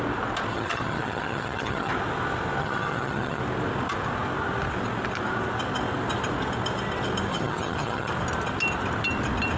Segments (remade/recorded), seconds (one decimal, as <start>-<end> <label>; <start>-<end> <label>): 0.0-0.5 recorded; 0.5-1.9 remade; 1.9-2.6 recorded; 2.6-3.4 remade; 3.4-7.3 recorded; 7.3-8.1 remade; 8.1-9.6 recorded